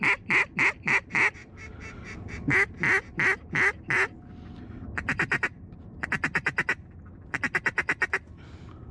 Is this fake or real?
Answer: real